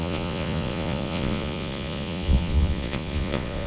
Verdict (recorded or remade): remade